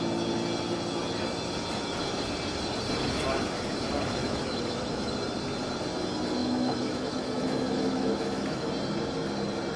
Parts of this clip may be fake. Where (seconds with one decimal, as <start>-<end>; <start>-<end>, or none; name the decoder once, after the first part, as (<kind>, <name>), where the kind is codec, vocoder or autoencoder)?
4.2-5.1 (autoencoder, DAC-VAE); 6.4-8.7